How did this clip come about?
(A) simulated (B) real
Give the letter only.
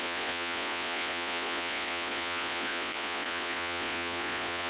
A